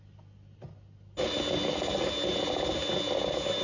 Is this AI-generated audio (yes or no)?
no